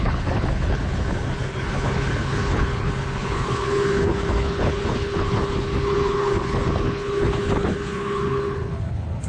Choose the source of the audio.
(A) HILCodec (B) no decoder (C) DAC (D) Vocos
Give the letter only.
A